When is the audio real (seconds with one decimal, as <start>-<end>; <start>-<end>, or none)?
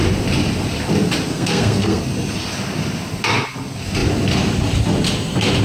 0.0-1.3; 2.0-5.6